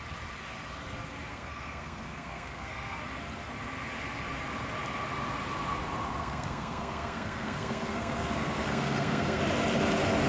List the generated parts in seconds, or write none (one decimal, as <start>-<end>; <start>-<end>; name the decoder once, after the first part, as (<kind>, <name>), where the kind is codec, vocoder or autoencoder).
1.3-3.0 (codec, SNAC); 6.2-9.4